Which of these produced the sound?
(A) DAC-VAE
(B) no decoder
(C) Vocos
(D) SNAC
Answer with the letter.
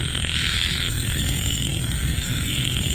D